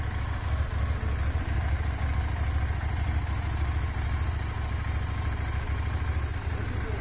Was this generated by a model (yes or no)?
no